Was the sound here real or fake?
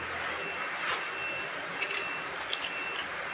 real